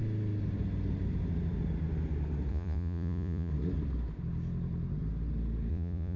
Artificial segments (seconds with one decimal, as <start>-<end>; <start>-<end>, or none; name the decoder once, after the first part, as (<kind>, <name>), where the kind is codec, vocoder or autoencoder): 2.5-3.5 (vocoder, Vocos); 5.7-6.2